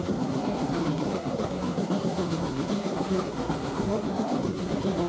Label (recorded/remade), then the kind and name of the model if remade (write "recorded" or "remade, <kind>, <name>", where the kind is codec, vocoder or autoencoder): remade, codec, SNAC